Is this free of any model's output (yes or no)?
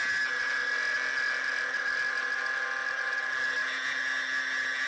yes